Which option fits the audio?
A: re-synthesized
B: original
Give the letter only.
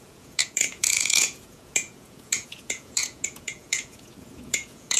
A